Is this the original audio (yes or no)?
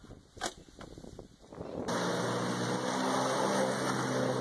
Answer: yes